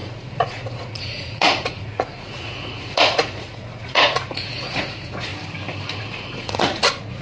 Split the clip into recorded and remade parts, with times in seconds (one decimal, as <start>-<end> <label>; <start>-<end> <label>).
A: 0.0-5.3 remade; 5.3-6.0 recorded; 6.0-7.2 remade